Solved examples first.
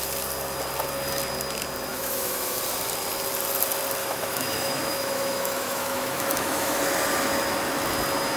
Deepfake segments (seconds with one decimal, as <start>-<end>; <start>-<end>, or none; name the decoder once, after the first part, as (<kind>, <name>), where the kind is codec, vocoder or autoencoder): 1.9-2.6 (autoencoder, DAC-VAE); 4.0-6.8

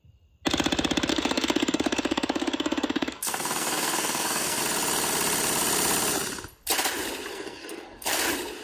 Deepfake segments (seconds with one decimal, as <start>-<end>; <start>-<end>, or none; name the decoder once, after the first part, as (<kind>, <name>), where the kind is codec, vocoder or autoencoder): 1.1-4.6 (codec, SNAC); 7.3-8.2

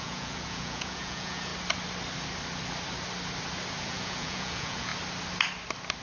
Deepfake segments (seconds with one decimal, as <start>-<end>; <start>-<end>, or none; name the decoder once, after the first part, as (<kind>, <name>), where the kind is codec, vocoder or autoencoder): 0.0-1.5 (vocoder, Vocos); 3.8-4.9

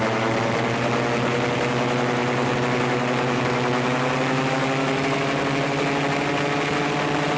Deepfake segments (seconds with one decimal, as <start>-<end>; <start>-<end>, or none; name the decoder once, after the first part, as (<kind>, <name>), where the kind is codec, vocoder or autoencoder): none